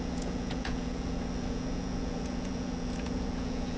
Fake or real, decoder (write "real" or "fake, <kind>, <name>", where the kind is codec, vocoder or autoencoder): fake, vocoder, Vocos